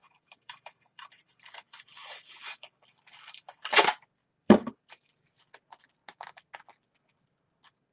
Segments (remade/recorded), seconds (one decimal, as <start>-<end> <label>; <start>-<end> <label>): 0.0-3.7 remade; 3.7-4.2 recorded; 4.2-5.4 remade; 5.4-7.9 recorded